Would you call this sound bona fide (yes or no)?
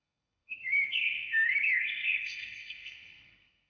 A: no